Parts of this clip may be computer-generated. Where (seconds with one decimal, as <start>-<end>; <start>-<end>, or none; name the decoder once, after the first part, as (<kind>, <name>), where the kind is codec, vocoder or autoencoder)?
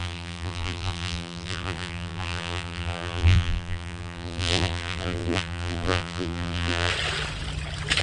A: 0.0-6.9 (vocoder, BigVGAN v2)